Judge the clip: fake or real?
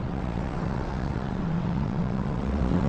fake